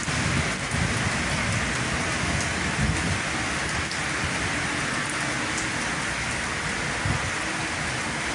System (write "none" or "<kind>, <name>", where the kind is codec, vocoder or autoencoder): none